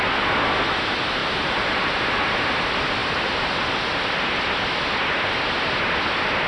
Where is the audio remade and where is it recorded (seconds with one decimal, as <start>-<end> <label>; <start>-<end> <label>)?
0.0-1.2 recorded; 1.2-1.9 remade; 1.9-6.5 recorded